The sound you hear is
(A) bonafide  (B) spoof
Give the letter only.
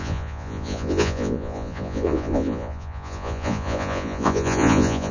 B